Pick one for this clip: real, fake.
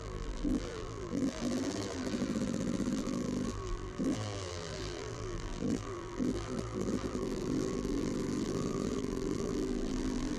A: fake